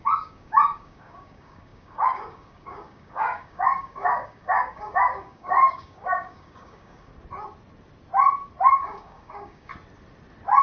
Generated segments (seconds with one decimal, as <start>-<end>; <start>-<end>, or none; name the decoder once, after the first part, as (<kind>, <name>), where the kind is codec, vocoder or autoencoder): 0.0-7.1 (codec, DAC); 8.7-9.7